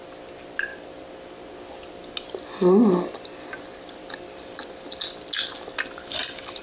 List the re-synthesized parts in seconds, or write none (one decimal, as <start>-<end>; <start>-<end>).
none

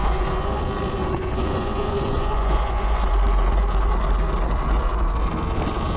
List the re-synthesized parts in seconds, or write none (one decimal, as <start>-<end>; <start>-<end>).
0.0-0.6; 1.0-3.1

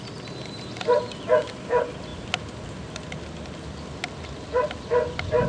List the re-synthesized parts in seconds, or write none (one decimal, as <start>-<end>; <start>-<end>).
none

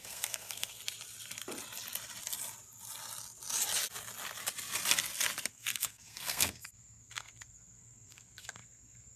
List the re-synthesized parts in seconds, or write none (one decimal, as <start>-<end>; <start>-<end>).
0.0-0.8; 5.5-9.2

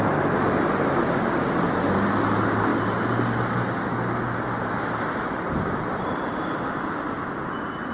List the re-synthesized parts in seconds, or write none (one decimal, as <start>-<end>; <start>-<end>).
none

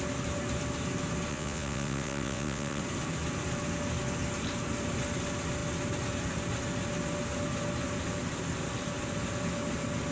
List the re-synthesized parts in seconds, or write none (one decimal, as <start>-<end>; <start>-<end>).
1.3-2.8

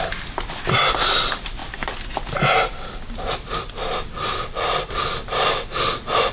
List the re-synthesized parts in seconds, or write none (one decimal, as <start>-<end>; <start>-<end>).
none

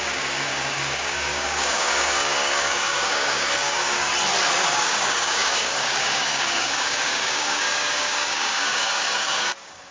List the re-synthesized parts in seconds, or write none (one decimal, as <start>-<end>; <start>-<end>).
0.0-4.1; 4.6-9.9